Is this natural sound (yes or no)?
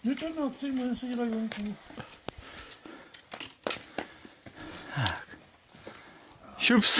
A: yes